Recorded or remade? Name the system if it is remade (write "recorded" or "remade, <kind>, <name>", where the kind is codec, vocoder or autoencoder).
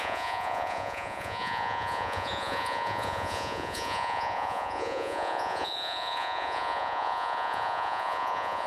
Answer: remade, vocoder, Vocos